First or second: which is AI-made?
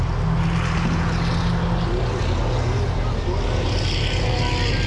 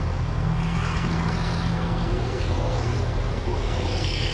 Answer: second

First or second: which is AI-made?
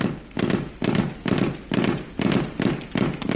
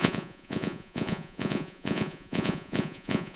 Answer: second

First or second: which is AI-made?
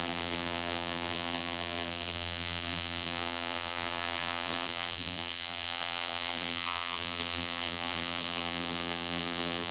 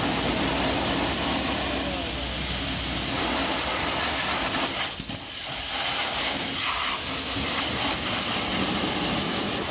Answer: first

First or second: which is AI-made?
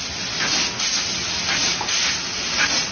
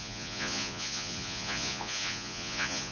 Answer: second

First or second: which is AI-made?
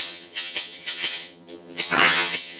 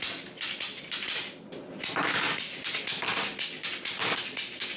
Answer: first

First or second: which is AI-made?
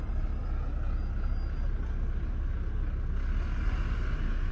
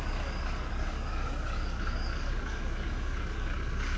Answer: second